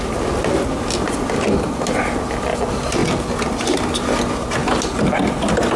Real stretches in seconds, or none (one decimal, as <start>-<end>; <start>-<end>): 0.0-5.8

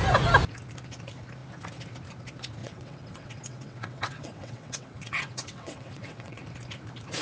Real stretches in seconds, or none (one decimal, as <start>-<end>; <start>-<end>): 0.0-2.6; 6.4-7.2

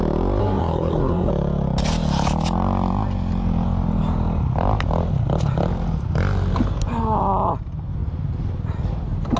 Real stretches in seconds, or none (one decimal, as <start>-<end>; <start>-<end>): 0.0-0.4; 1.3-9.4

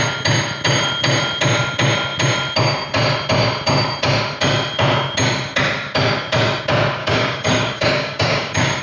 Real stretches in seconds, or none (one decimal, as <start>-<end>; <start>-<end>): 0.0-7.0